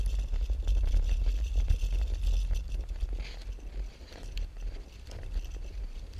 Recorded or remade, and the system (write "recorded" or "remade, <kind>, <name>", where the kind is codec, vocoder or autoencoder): recorded